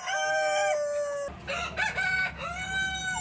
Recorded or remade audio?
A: recorded